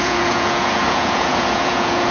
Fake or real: fake